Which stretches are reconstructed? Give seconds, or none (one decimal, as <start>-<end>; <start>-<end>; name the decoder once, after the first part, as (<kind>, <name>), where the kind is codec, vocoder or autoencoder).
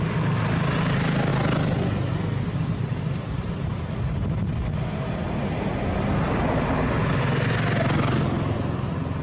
none